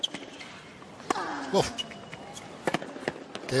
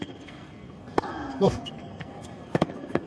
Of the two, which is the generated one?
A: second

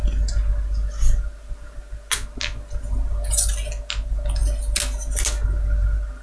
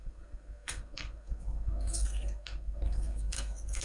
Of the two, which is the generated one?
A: second